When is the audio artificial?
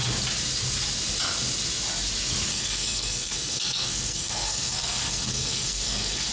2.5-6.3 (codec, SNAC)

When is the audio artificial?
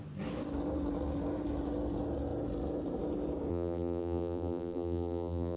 3.5-5.6 (vocoder, BigVGAN v2)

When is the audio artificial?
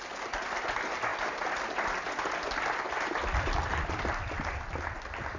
none